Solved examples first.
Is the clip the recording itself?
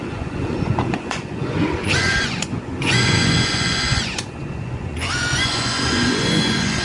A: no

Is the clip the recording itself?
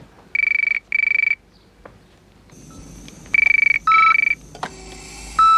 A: yes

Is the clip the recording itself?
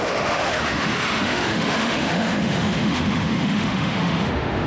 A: no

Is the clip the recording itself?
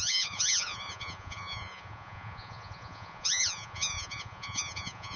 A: no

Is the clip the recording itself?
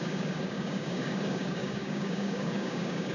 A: no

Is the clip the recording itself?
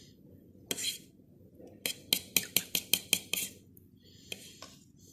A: yes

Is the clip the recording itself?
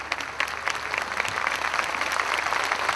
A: yes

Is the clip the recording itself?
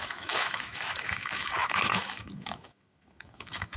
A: no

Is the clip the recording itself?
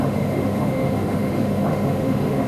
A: no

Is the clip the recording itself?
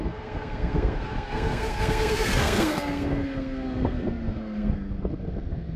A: no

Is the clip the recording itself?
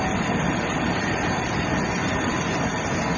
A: yes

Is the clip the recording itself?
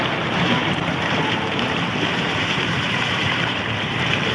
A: no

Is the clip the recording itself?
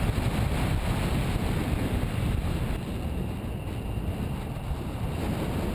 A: yes